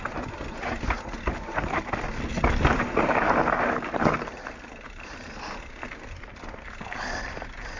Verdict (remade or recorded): recorded